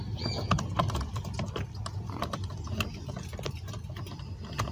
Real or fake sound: real